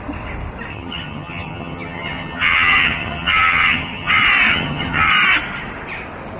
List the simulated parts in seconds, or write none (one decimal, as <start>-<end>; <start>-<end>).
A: 0.7-4.1; 4.5-5.1